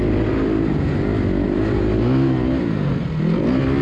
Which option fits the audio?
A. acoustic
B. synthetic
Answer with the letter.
A